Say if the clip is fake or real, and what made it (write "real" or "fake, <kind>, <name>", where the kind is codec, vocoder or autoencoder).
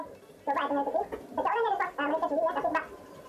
real